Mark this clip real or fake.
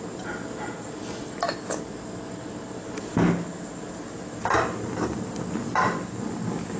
real